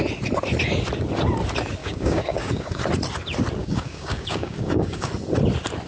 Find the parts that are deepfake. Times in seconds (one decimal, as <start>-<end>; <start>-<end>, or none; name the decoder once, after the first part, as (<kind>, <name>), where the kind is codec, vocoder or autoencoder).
1.8-2.8 (codec, DAC); 3.6-5.1